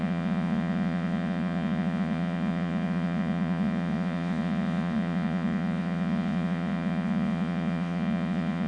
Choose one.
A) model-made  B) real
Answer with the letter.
A